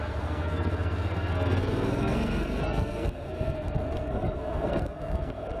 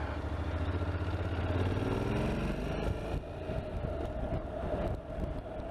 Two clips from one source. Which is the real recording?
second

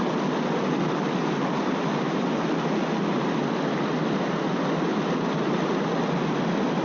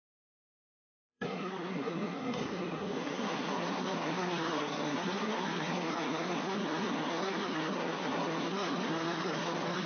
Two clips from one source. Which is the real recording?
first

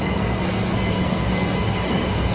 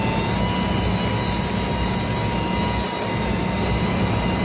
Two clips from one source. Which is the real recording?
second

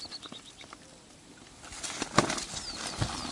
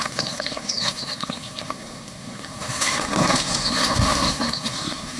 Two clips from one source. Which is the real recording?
first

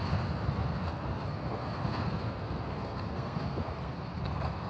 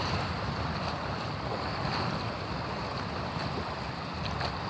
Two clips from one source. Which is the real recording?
second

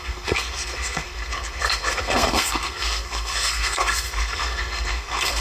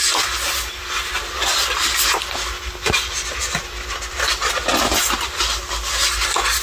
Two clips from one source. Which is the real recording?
second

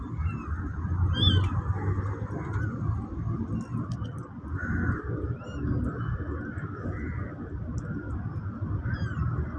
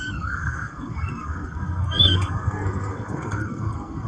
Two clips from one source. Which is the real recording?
first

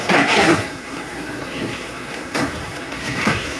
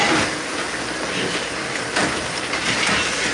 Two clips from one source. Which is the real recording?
second